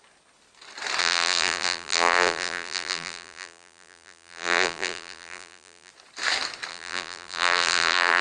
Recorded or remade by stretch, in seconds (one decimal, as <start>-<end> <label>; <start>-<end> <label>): 0.0-1.0 recorded; 1.0-5.9 remade; 5.9-6.7 recorded; 6.7-8.2 remade